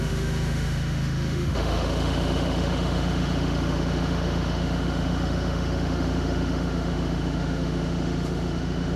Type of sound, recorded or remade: remade